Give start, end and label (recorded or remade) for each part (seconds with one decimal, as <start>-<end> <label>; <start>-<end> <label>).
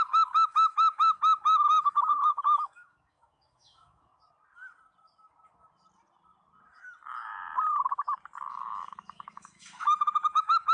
0.0-4.1 remade; 4.1-8.5 recorded; 8.5-10.7 remade